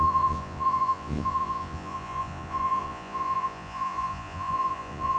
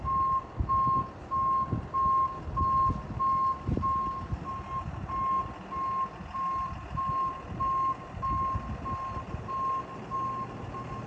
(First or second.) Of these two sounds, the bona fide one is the second